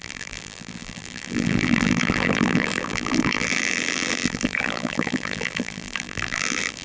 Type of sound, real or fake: fake